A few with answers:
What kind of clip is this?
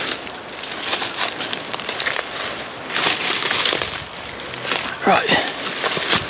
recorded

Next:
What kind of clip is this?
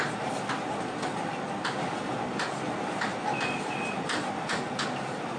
recorded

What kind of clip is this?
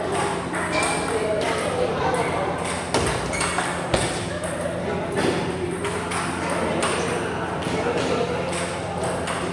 recorded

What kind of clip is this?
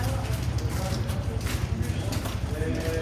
recorded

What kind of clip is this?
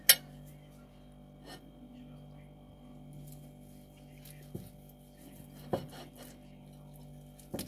recorded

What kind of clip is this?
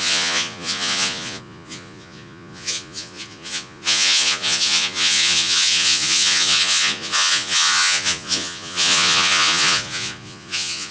remade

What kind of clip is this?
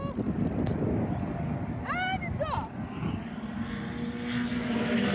recorded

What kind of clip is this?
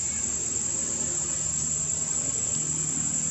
recorded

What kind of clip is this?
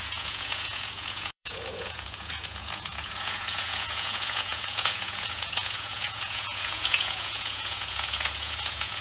remade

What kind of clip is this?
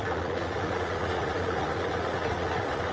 remade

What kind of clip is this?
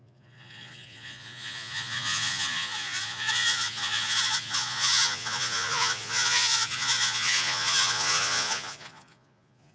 remade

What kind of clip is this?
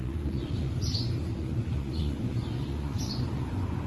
remade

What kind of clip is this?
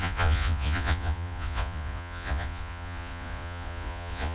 remade